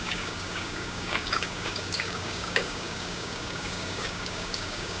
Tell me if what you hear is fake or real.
fake